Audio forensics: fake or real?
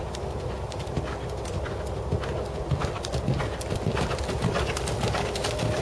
real